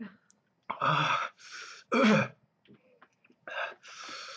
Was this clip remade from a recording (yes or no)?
no